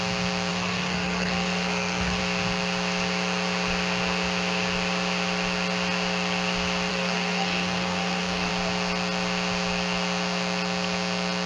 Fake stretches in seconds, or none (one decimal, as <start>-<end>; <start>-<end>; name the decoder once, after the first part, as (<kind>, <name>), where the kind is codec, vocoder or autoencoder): 0.5-2.2 (codec, SNAC); 6.9-8.5